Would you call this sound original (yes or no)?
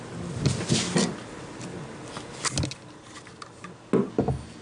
yes